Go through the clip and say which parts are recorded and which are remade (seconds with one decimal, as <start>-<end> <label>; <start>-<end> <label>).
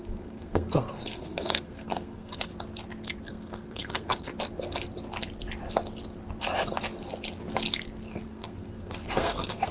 0.0-2.5 remade; 2.5-3.3 recorded; 3.3-4.3 remade; 4.3-8.1 recorded; 8.1-9.7 remade